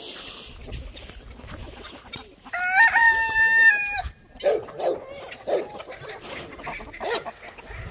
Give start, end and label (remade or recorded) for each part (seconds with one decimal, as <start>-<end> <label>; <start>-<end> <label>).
0.0-7.9 recorded